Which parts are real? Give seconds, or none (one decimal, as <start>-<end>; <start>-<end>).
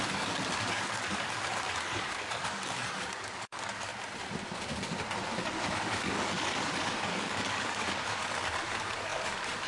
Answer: 3.9-5.4